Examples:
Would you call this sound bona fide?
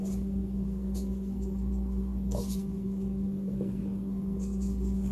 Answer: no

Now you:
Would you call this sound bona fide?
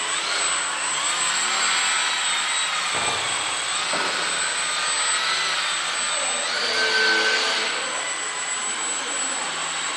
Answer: yes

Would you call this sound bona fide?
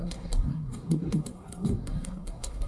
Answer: no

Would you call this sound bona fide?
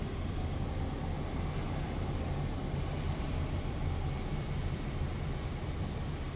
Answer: yes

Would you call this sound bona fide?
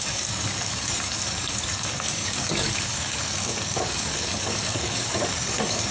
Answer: no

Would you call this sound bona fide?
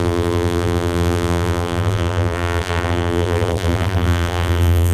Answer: no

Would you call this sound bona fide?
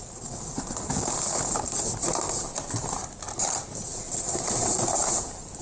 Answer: yes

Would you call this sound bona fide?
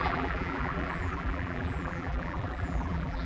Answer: no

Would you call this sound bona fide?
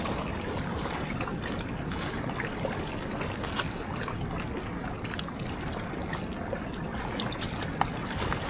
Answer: yes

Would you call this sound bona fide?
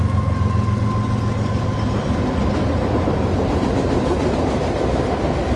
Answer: yes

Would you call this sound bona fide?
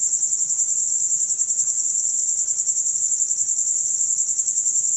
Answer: yes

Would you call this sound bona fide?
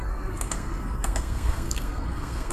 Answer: no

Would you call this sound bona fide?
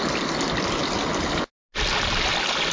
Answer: yes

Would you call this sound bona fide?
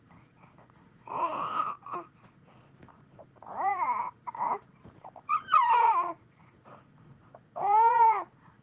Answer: no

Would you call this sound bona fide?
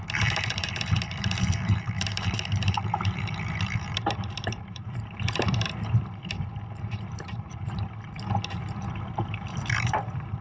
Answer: no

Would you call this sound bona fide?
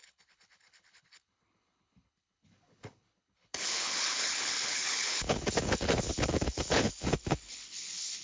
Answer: no